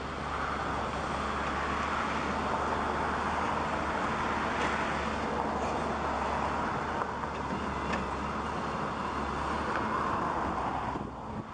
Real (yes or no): yes